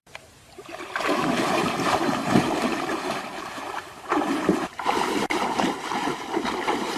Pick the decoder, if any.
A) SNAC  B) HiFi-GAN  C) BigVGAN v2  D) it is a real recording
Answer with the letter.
C